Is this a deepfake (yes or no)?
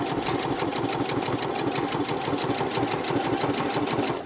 no